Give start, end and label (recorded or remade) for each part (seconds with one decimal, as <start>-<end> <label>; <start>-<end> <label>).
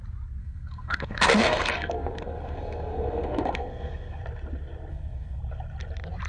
0.0-0.4 recorded; 0.4-4.2 remade; 4.2-4.9 recorded; 4.9-5.4 remade; 5.4-6.3 recorded